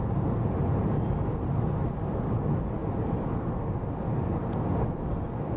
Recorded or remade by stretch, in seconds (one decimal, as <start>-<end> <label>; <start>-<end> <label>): 0.0-5.6 recorded